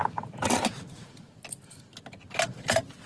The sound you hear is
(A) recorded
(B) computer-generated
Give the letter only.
A